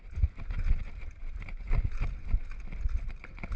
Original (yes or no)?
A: yes